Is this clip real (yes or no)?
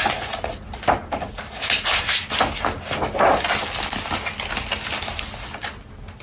yes